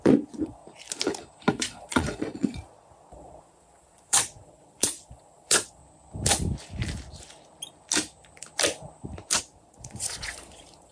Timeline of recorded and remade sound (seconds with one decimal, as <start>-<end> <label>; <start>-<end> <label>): 0.0-0.6 remade; 0.6-1.5 recorded; 1.5-5.8 remade; 5.8-9.4 recorded; 9.4-10.9 remade